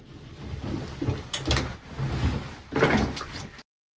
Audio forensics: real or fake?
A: real